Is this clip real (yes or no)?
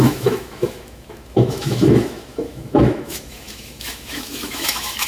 no